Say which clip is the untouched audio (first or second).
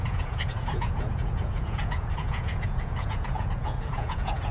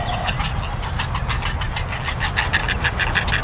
second